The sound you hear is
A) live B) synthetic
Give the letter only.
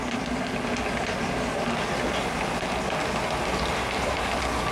A